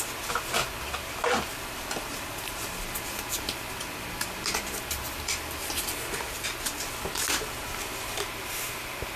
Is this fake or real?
real